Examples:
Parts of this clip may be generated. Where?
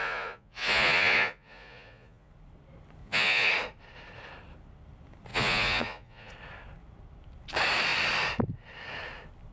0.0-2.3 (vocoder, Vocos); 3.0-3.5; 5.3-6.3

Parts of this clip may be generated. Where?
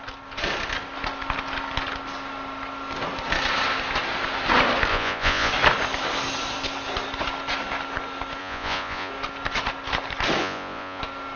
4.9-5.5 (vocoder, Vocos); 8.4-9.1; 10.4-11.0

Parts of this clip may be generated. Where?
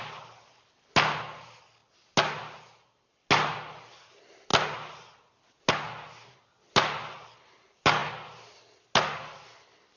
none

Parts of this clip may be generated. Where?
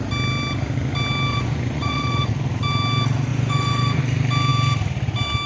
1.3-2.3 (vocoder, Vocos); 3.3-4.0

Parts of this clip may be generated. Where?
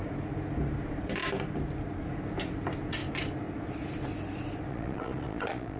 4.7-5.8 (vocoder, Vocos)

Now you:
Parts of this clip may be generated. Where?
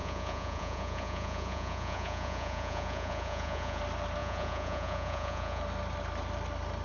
0.0-3.8 (vocoder, Vocos); 4.2-5.6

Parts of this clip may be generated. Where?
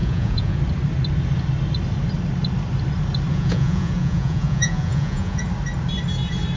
0.0-0.6 (vocoder, Vocos); 3.3-5.4